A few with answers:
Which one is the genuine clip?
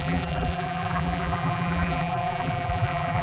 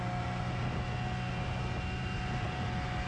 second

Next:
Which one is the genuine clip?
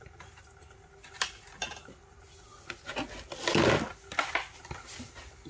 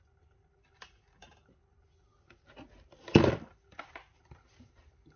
first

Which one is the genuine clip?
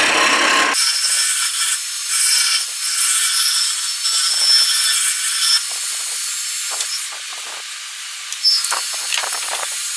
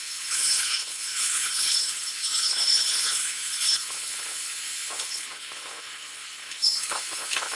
first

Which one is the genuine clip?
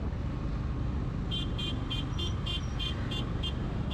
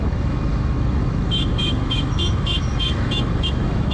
first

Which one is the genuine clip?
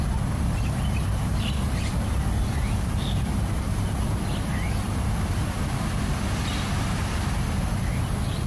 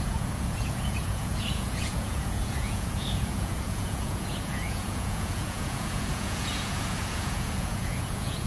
first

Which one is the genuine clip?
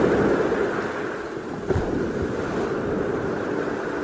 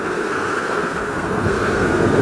first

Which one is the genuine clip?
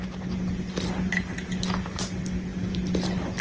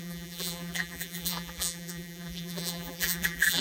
first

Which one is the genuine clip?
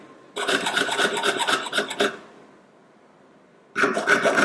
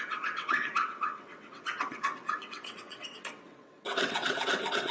first